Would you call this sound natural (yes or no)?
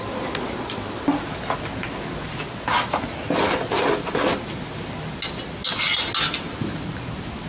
yes